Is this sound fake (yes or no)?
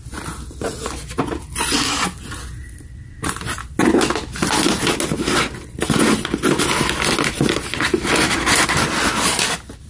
no